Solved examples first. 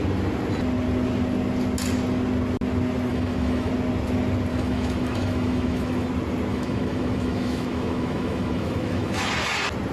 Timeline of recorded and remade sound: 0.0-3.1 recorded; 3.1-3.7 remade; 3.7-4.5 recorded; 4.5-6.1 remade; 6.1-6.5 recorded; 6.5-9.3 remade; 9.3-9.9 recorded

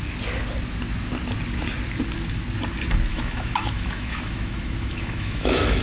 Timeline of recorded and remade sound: 0.0-3.1 recorded; 3.1-5.8 remade

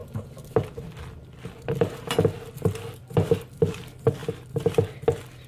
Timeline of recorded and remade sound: 0.0-5.5 recorded

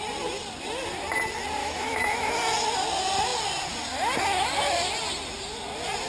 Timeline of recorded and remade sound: 0.0-1.6 recorded; 1.6-2.3 remade; 2.3-6.1 recorded

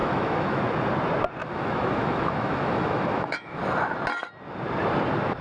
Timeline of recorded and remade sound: 0.0-0.6 remade; 0.6-1.4 recorded; 1.4-3.6 remade; 3.6-5.4 recorded